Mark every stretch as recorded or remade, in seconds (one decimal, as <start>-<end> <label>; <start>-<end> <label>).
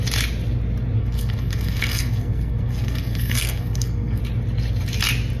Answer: 0.0-1.0 recorded; 1.0-4.2 remade; 4.2-5.4 recorded